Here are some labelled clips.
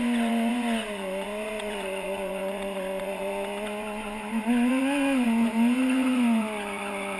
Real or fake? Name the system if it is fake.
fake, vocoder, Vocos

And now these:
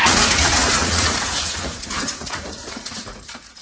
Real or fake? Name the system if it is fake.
fake, vocoder, Vocos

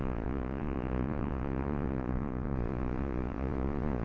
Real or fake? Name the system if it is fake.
fake, vocoder, Vocos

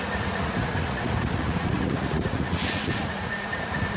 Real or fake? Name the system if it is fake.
fake, vocoder, Vocos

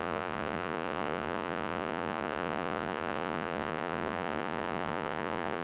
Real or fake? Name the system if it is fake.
fake, vocoder, Vocos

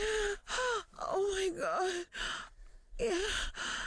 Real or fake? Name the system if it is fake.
real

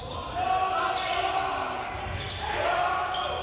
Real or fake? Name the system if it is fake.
real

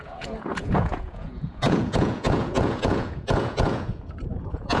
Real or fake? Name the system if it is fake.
fake, vocoder, Vocos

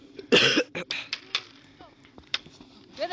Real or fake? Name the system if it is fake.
real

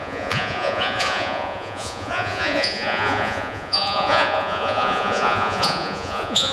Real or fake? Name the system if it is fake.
fake, vocoder, Vocos